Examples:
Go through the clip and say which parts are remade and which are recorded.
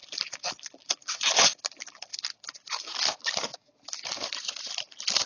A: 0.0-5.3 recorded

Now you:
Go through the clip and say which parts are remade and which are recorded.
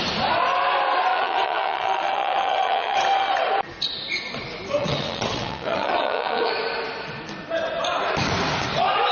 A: 0.0-1.1 recorded; 1.1-3.3 remade; 3.3-4.8 recorded; 4.8-6.5 remade; 6.5-9.1 recorded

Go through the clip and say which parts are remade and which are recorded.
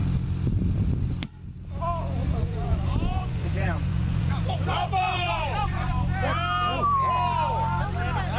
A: 0.0-2.2 recorded; 2.2-5.9 remade; 5.9-8.4 recorded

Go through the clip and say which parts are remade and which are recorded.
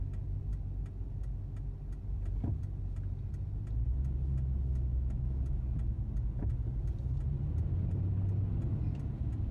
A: 0.0-4.9 recorded; 4.9-5.4 remade; 5.4-9.5 recorded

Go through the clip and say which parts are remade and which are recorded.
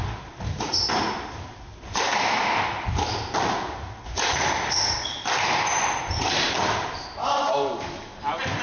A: 0.0-8.6 recorded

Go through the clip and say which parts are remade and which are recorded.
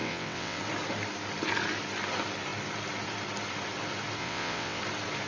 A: 0.0-0.6 remade; 0.6-4.2 recorded; 4.2-4.8 remade; 4.8-5.3 recorded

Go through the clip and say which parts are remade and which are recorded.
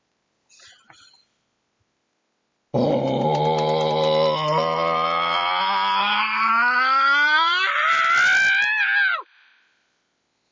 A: 0.0-6.0 recorded; 6.0-6.5 remade; 6.5-10.5 recorded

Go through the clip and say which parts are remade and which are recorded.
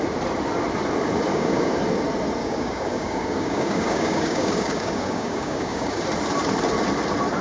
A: 0.0-1.3 recorded; 1.3-1.8 remade; 1.8-2.4 recorded; 2.4-6.0 remade; 6.0-7.4 recorded